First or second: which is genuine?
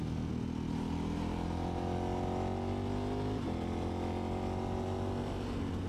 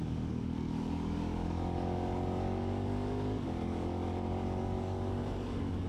first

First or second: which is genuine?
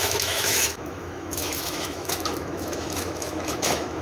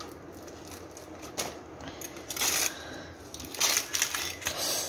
second